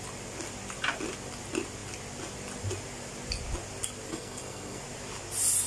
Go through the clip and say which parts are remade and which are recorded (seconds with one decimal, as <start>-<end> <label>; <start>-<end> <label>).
0.0-4.1 recorded; 4.1-4.8 remade; 4.8-5.7 recorded